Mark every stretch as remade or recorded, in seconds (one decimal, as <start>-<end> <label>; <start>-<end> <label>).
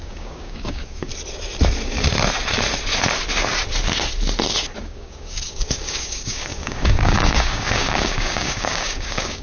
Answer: 0.0-1.1 remade; 1.1-4.8 recorded; 4.8-9.4 remade